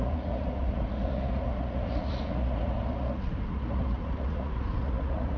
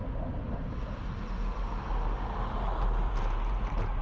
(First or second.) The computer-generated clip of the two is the first